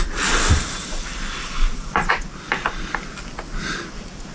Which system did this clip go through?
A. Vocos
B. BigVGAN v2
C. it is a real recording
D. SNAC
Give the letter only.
B